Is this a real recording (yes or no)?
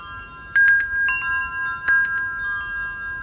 yes